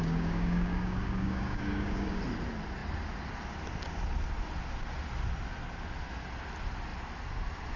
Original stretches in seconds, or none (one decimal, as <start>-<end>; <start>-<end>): 2.2-7.8